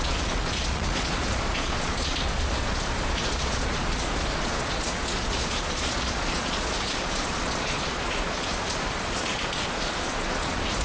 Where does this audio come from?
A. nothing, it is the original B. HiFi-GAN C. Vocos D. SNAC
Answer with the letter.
C